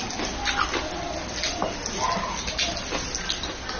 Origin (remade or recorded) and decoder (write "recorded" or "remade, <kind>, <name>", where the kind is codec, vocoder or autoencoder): recorded